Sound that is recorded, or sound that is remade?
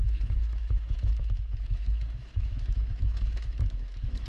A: remade